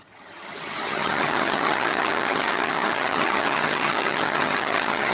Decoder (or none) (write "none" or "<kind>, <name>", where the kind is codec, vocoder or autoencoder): vocoder, HiFi-GAN